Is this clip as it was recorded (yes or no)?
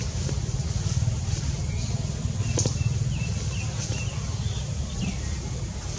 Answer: yes